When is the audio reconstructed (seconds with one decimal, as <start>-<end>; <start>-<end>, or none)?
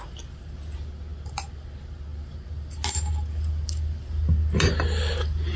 none